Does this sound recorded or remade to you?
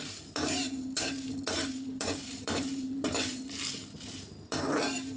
remade